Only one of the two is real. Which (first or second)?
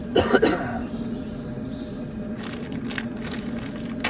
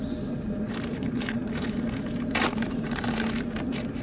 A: first